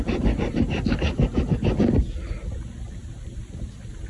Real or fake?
real